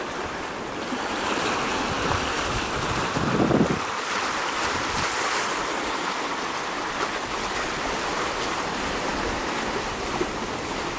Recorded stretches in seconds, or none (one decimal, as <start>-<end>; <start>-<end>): 0.0-11.0